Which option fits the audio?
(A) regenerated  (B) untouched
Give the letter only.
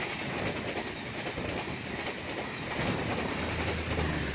B